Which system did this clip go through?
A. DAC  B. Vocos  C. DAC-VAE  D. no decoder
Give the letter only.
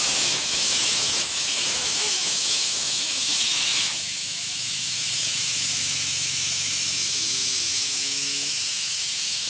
C